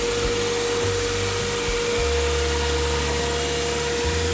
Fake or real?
real